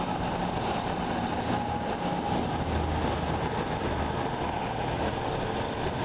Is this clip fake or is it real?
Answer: real